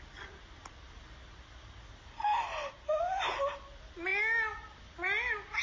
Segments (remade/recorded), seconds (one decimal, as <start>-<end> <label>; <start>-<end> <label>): 0.0-5.6 recorded